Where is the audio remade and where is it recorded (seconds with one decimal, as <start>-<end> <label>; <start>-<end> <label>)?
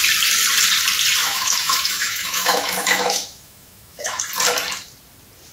0.0-1.2 recorded; 1.2-4.2 remade; 4.2-5.5 recorded